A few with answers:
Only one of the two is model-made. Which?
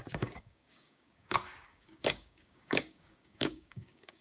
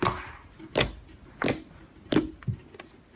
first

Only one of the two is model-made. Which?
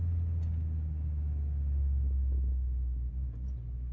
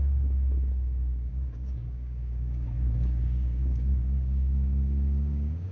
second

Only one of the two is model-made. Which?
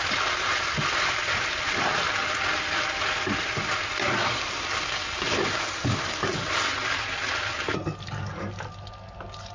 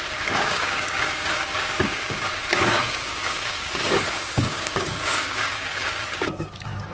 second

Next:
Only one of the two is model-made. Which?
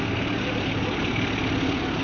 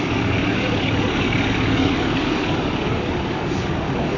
second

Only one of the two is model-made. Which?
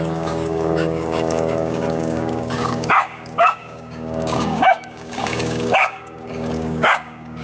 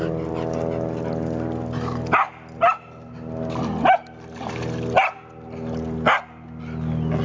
first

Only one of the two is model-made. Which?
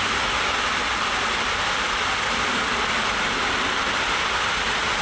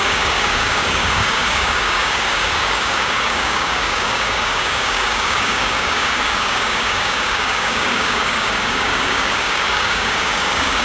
second